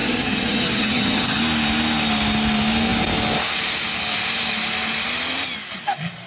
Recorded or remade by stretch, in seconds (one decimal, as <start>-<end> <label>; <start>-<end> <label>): 0.0-1.4 remade; 1.4-6.3 recorded